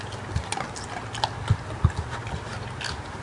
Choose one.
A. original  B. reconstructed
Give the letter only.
A